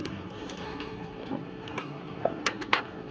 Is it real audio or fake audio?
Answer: fake